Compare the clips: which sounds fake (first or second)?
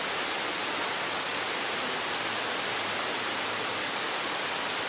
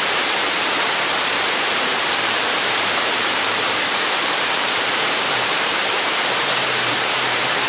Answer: second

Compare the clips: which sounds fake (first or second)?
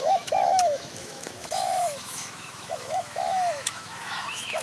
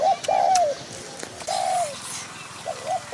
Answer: first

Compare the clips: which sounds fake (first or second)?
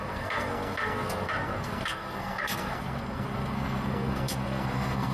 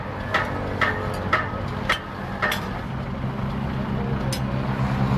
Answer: first